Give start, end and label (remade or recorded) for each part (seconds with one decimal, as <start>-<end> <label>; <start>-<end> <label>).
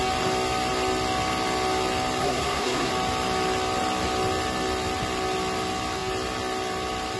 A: 0.0-2.2 recorded; 2.2-2.9 remade; 2.9-7.2 recorded